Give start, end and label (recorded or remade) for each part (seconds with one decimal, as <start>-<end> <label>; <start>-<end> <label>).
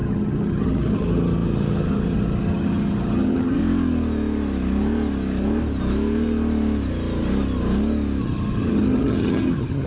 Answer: 0.0-3.6 remade; 3.6-8.2 recorded; 8.2-9.9 remade